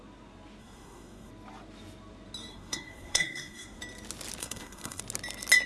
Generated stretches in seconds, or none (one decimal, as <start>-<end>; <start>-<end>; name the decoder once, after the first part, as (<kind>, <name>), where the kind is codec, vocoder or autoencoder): 0.6-1.3 (codec, SNAC); 2.5-3.8; 4.4-5.0